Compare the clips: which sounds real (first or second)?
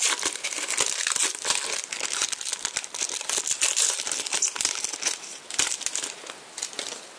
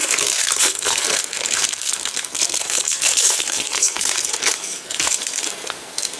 first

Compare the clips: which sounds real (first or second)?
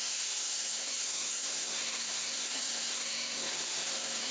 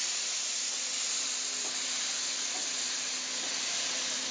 second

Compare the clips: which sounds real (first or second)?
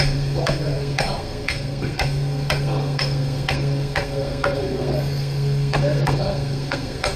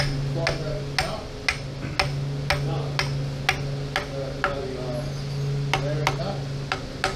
second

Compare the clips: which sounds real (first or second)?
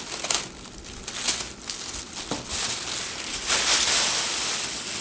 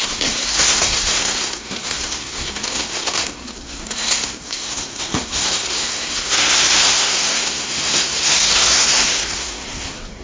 first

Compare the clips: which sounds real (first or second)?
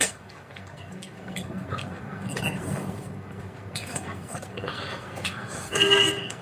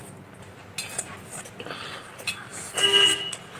second